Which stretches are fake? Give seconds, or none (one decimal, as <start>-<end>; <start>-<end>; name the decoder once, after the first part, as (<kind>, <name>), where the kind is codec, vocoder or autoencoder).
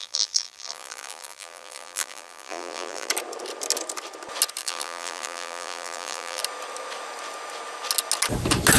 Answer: 0.0-3.1 (vocoder, BigVGAN v2); 4.6-6.4